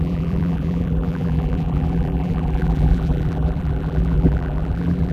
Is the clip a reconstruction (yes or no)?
yes